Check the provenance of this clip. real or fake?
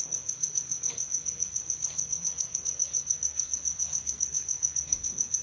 fake